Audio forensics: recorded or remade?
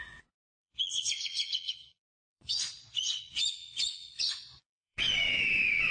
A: remade